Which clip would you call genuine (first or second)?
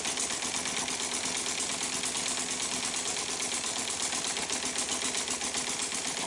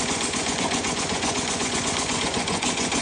first